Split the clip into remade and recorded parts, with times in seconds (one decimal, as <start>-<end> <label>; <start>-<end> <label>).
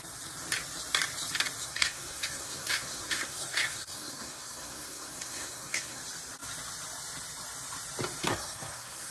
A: 0.0-1.6 recorded; 1.6-6.0 remade; 6.0-8.2 recorded; 8.2-9.1 remade